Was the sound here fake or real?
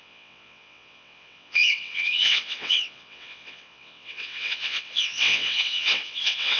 fake